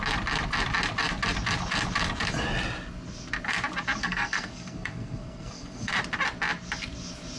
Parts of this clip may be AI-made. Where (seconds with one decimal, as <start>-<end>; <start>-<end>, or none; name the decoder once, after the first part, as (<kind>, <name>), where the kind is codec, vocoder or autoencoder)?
4.0-5.9 (codec, SNAC)